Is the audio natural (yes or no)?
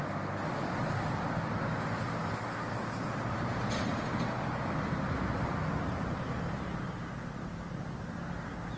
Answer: yes